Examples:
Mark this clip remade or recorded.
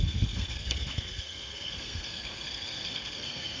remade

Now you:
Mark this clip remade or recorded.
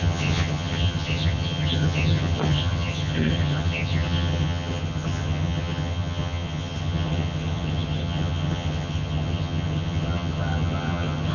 remade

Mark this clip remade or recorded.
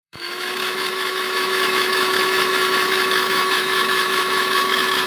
remade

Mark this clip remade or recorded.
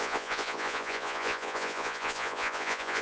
remade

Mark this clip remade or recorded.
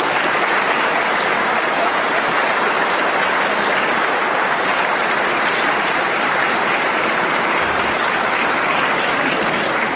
remade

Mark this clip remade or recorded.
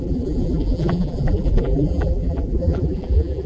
remade